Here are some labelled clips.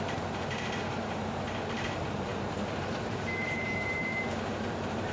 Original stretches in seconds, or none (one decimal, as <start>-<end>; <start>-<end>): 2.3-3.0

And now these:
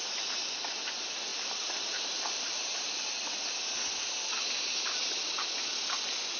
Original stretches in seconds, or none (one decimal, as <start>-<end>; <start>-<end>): 0.0-1.3; 3.0-6.4

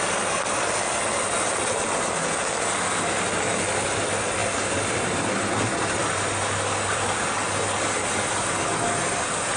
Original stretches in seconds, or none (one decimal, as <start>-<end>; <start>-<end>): 0.0-9.6

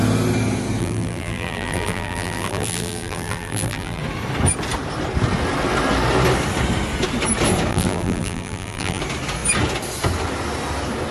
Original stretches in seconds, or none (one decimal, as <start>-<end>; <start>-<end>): 0.0-0.8; 4.0-7.7; 9.0-11.1